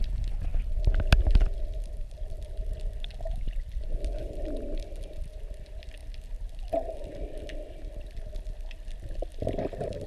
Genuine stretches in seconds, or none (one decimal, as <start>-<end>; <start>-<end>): 0.0-10.1